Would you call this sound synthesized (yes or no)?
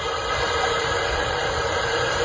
yes